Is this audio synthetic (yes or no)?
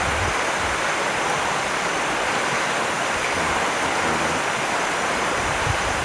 yes